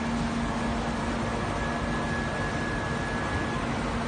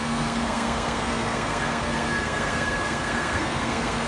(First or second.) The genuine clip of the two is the first